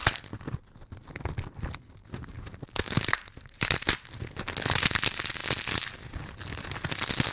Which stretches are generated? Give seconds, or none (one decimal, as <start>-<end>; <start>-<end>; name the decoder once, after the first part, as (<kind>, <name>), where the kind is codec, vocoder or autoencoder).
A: 2.0-3.9 (vocoder, BigVGAN v2)

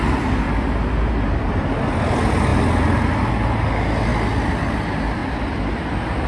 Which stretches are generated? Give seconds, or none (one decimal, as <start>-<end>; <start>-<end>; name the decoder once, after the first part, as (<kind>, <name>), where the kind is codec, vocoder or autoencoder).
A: none

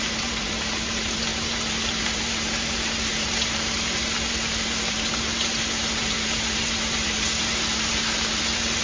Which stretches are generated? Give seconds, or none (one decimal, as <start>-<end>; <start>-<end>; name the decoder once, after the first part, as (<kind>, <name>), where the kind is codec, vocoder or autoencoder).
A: 0.0-8.8 (vocoder, BigVGAN v2)

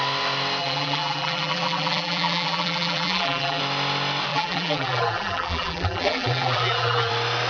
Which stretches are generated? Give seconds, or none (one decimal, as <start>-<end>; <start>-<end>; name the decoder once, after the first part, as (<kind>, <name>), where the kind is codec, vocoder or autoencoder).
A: 0.6-3.6 (vocoder, BigVGAN v2); 4.3-7.1